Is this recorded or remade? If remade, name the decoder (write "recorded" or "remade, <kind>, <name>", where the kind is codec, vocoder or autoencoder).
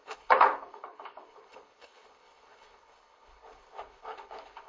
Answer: remade, codec, HILCodec